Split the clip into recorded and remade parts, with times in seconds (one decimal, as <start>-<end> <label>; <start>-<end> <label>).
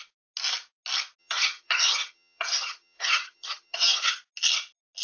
0.0-1.2 recorded; 1.2-4.2 remade; 4.2-5.0 recorded